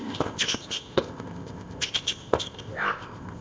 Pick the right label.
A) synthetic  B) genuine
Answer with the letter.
A